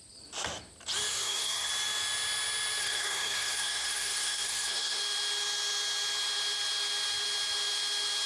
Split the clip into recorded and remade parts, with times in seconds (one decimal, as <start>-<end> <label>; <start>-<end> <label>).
0.0-1.1 recorded; 1.1-1.7 remade; 1.7-2.8 recorded; 2.8-5.0 remade; 5.0-8.3 recorded